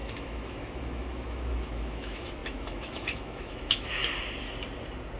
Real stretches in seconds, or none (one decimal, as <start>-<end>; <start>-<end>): 4.0-5.2